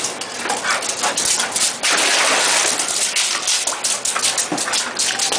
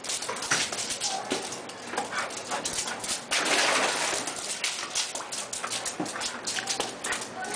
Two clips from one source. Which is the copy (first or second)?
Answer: first